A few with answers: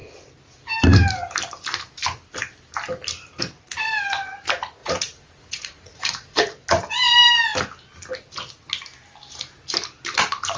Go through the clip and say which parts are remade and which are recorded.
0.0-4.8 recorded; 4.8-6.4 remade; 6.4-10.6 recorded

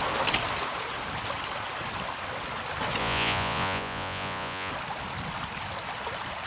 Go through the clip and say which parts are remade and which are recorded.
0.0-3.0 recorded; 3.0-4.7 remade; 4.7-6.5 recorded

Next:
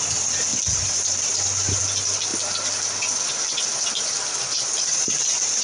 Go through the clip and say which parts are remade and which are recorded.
0.0-5.6 recorded

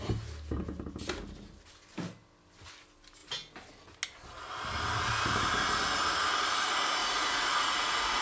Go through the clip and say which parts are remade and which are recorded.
0.0-7.0 recorded; 7.0-8.2 remade

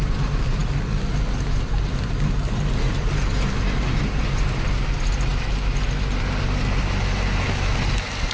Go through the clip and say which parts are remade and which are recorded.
0.0-8.3 recorded

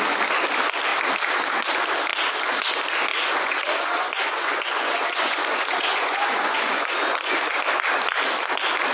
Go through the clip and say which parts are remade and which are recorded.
0.0-3.1 recorded; 3.1-7.6 remade; 7.6-8.9 recorded

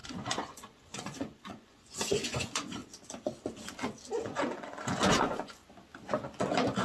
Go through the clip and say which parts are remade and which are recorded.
0.0-2.8 remade; 2.8-4.1 recorded; 4.1-5.6 remade; 5.6-6.8 recorded